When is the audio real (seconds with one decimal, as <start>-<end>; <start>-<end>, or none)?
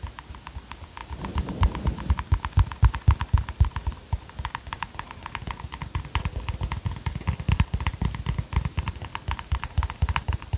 0.0-10.6